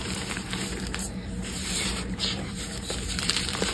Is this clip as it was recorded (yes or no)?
no